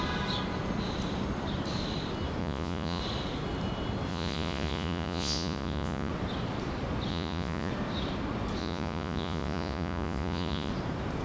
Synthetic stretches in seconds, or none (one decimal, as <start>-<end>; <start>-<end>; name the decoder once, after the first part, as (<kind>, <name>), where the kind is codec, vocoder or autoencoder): 2.4-3.0 (vocoder, Vocos); 4.1-6.1; 7.1-7.7; 8.6-10.7